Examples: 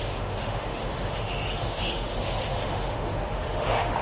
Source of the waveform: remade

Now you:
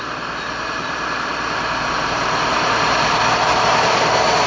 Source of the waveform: recorded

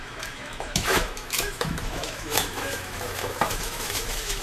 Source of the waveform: remade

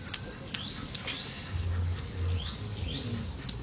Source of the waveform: recorded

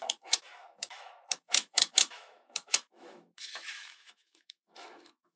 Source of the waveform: remade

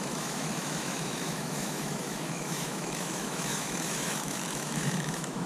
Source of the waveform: remade